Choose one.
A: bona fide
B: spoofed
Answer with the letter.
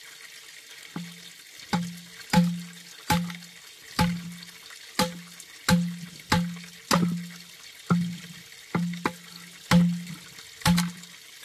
A